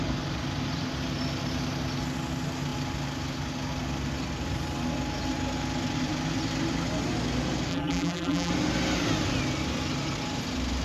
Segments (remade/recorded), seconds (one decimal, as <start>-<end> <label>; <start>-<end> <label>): 0.0-7.7 recorded; 7.7-8.5 remade; 8.5-10.8 recorded